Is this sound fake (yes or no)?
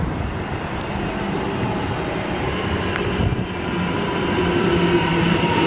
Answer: yes